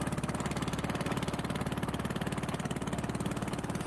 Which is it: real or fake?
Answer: real